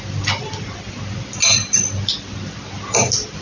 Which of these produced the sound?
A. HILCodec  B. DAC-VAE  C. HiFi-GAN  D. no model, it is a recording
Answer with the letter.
D